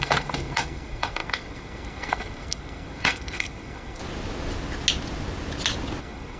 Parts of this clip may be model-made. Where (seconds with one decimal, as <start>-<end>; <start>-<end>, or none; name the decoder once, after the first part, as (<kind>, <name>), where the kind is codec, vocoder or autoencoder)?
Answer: 0.0-4.0 (codec, SNAC); 6.0-6.4